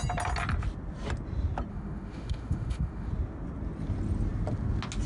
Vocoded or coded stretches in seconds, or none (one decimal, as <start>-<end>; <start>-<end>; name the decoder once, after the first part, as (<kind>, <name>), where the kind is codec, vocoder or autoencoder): 1.7-3.1 (autoencoder, DAC-VAE)